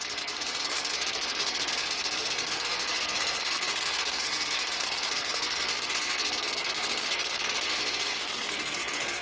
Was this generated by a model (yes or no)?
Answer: yes